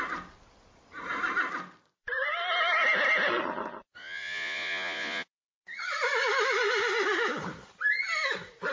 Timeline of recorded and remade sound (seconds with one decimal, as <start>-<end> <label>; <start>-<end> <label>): 0.0-4.0 recorded; 4.0-5.3 remade; 5.3-8.7 recorded